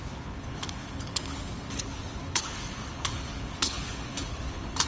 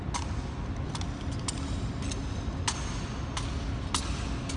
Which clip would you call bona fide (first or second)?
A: second